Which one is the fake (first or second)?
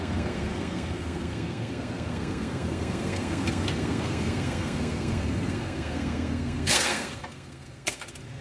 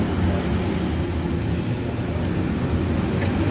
first